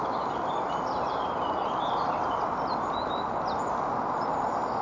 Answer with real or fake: real